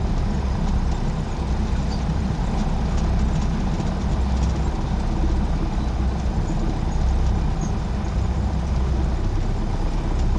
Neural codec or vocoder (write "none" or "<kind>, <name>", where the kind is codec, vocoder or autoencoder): none